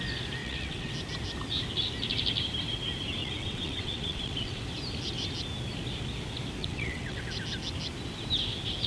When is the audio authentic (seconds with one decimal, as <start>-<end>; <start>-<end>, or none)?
0.0-0.4; 0.9-3.2; 4.6-6.6; 7.2-8.9